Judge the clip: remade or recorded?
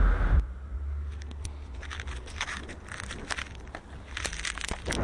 recorded